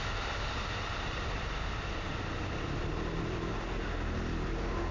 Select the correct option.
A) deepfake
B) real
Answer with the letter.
B